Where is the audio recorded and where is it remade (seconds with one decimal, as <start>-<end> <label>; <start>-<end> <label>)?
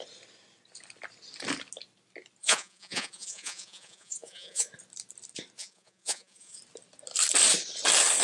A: 0.0-2.4 recorded; 2.4-4.7 remade; 4.7-5.6 recorded; 5.6-6.6 remade; 6.6-8.2 recorded